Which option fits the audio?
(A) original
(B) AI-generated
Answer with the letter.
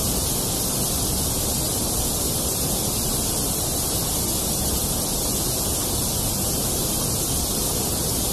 A